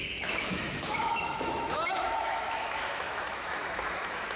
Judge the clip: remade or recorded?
remade